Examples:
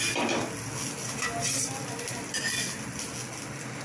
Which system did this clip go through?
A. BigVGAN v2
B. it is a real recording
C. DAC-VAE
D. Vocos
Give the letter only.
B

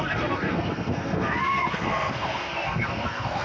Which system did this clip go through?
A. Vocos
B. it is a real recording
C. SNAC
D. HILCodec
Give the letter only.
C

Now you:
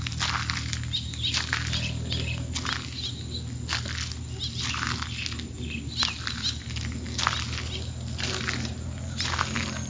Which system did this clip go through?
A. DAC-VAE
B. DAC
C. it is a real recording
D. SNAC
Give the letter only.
C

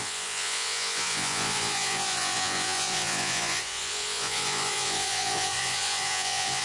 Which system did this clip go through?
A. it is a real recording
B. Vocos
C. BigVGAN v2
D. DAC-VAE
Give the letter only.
B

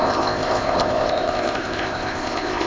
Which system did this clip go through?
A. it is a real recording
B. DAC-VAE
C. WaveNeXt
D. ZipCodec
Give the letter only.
D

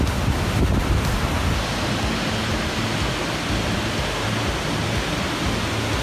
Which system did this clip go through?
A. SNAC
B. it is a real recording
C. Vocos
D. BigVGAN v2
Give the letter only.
B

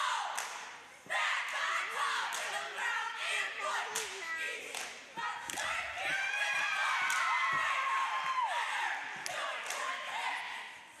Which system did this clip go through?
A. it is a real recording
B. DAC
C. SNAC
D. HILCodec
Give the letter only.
A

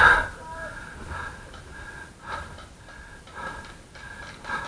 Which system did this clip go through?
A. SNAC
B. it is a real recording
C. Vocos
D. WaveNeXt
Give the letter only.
B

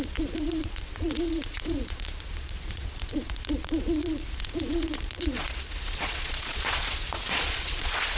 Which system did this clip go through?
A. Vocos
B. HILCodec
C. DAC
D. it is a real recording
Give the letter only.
A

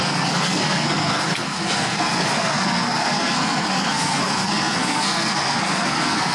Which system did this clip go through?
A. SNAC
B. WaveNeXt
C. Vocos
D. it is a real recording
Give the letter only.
A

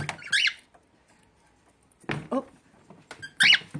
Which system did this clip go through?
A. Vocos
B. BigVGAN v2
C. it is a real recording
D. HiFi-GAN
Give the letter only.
C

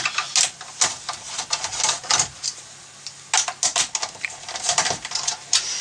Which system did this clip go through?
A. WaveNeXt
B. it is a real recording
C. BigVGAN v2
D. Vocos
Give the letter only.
B